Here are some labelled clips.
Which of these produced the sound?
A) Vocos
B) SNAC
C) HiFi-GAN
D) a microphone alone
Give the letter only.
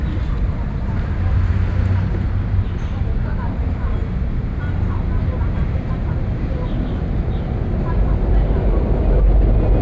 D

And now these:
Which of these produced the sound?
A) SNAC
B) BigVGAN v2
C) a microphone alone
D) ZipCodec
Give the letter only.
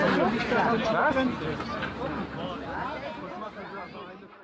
C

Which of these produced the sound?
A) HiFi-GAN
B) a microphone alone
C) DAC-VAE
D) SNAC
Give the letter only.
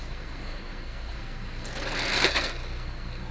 D